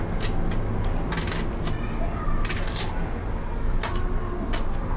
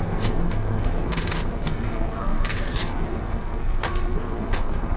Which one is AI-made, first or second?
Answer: second